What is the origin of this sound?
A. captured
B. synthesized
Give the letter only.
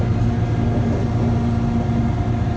A